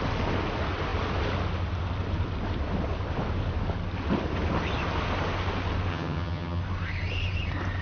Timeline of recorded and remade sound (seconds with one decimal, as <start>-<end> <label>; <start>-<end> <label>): 0.0-5.9 recorded; 5.9-6.6 remade; 6.6-7.8 recorded